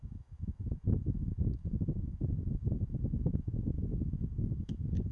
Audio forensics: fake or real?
fake